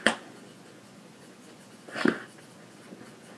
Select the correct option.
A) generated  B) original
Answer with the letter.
A